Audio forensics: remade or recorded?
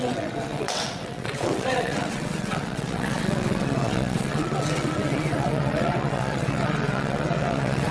remade